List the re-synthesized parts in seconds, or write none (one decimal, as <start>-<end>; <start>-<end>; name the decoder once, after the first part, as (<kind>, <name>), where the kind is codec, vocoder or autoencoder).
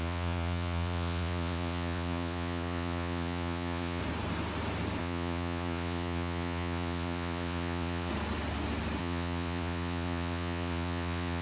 0.0-4.0 (vocoder, Vocos); 5.0-8.1; 9.0-11.4